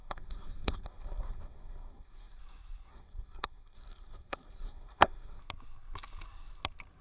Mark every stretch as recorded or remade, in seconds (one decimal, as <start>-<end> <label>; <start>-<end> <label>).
0.0-2.4 remade; 2.4-2.9 recorded; 2.9-5.4 remade; 5.4-7.0 recorded